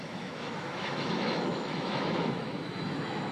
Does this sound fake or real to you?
fake